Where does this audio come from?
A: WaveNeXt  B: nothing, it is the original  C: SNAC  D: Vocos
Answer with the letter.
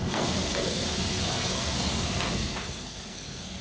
C